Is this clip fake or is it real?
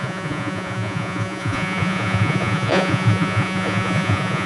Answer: fake